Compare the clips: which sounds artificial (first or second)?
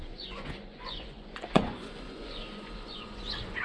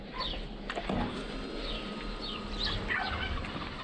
first